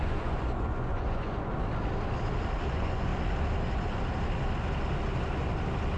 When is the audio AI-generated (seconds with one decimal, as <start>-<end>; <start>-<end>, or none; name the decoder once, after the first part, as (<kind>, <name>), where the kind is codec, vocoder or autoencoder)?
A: 0.0-1.5 (vocoder, Vocos); 2.7-3.1

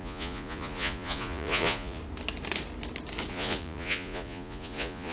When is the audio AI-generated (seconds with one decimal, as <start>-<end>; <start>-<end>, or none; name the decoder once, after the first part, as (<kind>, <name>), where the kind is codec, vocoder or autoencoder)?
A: 0.0-2.0 (vocoder, Vocos); 3.3-5.1

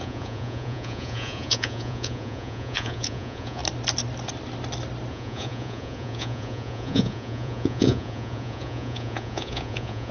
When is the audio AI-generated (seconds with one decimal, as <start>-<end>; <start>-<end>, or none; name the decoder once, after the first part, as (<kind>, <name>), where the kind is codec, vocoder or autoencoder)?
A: 0.0-3.6 (vocoder, Vocos); 5.1-10.1

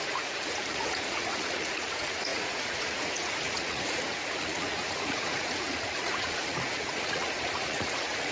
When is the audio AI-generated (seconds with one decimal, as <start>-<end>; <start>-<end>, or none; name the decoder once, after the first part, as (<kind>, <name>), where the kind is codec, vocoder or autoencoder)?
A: 0.0-8.3 (vocoder, Vocos)

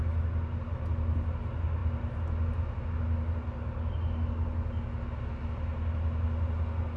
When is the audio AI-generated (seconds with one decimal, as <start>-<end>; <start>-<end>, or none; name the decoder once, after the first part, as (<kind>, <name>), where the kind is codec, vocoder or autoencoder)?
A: none